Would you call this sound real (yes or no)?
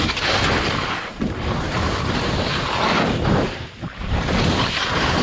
yes